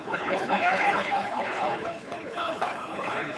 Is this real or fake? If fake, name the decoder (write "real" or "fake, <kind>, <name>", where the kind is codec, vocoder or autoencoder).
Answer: fake, codec, HILCodec